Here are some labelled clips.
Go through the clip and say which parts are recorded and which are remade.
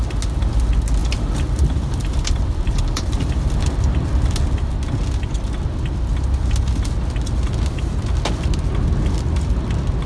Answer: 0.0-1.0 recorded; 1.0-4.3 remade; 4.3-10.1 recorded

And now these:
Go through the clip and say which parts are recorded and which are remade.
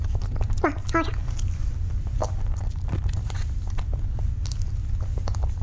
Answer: 0.0-1.2 recorded; 1.2-4.6 remade; 4.6-5.6 recorded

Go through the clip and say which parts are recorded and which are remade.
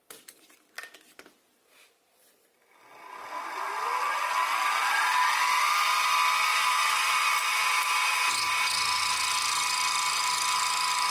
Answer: 0.0-6.5 recorded; 6.5-8.3 remade; 8.3-11.1 recorded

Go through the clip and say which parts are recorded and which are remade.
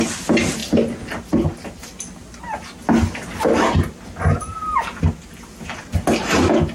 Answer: 0.0-6.7 recorded